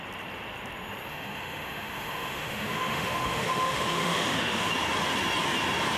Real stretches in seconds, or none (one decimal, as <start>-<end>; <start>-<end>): 0.0-1.1; 4.7-6.0